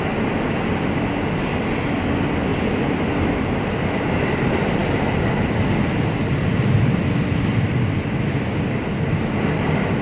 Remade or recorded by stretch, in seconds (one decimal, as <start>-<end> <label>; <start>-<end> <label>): 0.0-10.0 recorded

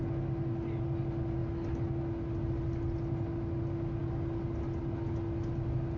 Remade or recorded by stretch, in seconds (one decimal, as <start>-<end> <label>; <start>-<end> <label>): 0.0-6.0 recorded

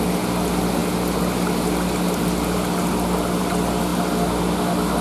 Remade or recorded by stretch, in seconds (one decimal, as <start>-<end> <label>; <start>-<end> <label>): 0.0-5.0 recorded